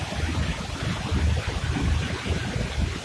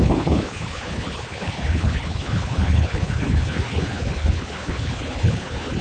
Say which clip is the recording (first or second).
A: first